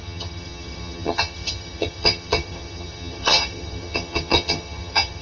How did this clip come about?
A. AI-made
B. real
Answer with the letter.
A